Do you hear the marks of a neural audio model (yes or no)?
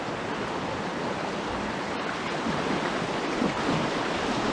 no